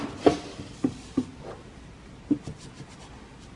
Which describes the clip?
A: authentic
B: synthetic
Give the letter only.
A